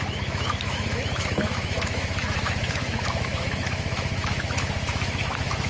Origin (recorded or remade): remade